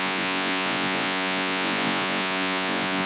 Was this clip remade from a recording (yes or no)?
yes